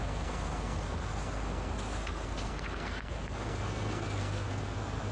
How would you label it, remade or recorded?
remade